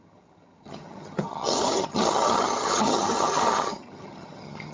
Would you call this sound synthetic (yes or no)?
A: yes